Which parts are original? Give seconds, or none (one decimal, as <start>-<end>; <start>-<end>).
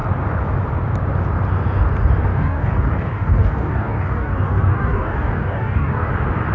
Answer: 0.0-2.3; 6.1-6.5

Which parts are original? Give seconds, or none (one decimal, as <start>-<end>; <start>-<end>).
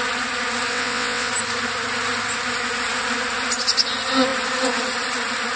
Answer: 0.0-0.7; 1.3-5.6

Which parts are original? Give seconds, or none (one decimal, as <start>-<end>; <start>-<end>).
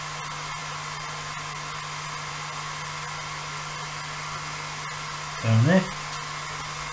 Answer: 0.0-6.9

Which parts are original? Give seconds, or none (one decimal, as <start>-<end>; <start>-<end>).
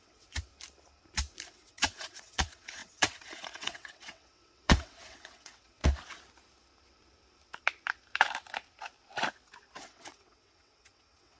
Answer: 0.5-1.5; 5.8-9.8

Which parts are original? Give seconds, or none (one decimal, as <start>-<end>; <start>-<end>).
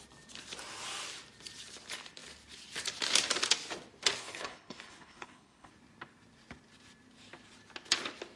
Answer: 0.0-4.2; 5.7-8.4